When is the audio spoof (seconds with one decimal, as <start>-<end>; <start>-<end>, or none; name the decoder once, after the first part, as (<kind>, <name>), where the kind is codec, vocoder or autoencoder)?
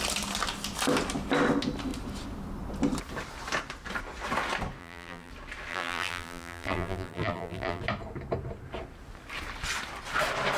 4.8-5.3 (vocoder, BigVGAN v2); 5.7-7.8